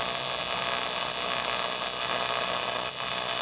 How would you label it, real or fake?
real